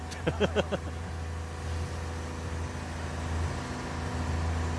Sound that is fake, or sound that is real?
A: real